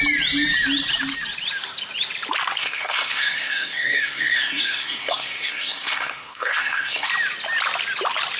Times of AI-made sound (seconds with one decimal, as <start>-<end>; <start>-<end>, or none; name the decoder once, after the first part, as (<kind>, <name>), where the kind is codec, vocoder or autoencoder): 2.6-7.1 (codec, SNAC)

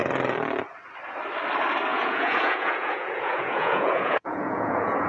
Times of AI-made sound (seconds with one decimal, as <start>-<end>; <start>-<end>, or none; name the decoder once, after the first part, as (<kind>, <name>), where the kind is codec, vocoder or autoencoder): 1.9-5.1 (vocoder, Vocos)

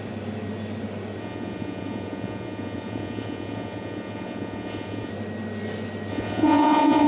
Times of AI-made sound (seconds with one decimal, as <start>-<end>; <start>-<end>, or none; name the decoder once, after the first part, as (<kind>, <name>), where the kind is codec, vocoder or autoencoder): 1.2-5.1 (vocoder, Vocos); 6.1-7.1